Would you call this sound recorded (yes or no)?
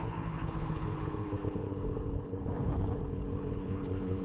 no